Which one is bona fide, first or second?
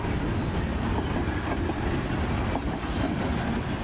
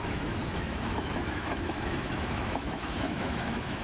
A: first